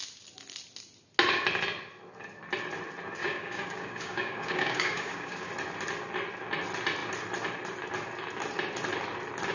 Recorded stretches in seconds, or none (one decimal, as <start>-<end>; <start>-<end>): 0.0-3.2; 5.5-9.5